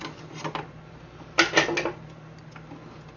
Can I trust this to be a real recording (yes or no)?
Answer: yes